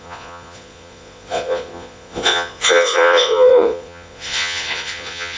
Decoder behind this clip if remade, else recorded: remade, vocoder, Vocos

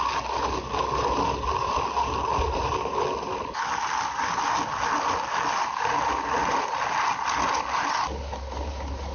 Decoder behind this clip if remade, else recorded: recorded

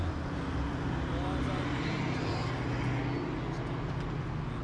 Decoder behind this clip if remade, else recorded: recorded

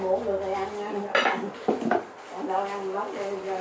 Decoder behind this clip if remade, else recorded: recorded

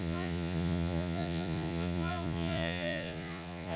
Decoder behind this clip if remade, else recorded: remade, vocoder, Vocos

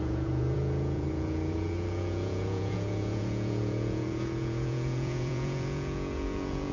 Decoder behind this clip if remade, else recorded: remade, vocoder, Vocos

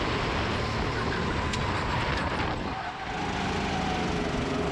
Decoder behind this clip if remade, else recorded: recorded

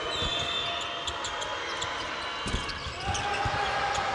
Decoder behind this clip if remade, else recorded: recorded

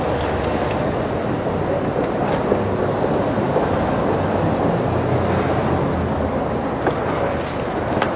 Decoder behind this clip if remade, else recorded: recorded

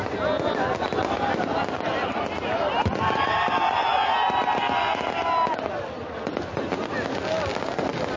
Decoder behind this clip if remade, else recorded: recorded